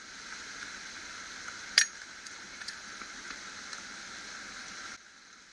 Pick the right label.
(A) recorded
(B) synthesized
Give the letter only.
A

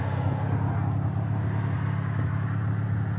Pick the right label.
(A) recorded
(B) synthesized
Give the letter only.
A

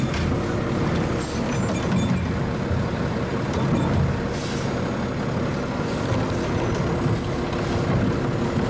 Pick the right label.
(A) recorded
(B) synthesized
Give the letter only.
A